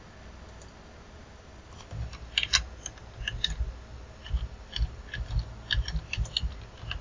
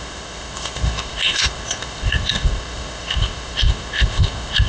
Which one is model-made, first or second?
second